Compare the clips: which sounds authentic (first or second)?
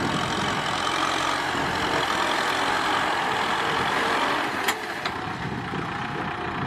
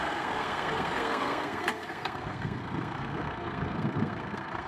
first